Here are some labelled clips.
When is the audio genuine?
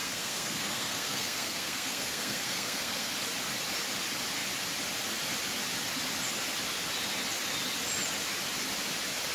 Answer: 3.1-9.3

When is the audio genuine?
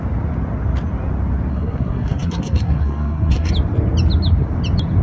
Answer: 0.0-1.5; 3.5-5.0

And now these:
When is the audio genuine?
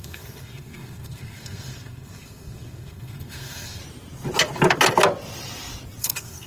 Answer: 3.8-6.0